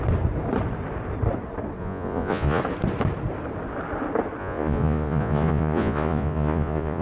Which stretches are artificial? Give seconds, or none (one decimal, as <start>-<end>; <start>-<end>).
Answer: 1.8-2.6; 4.4-7.0